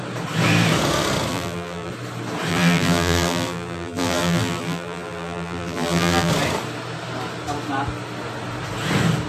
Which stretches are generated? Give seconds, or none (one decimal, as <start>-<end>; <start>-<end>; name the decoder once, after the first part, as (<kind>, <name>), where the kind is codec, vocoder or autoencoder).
1.3-1.9 (vocoder, BigVGAN v2); 2.5-6.3